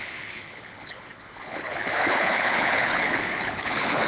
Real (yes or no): no